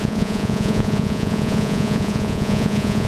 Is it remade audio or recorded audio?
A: remade